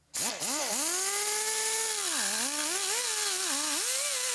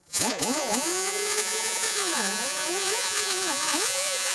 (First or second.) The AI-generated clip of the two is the second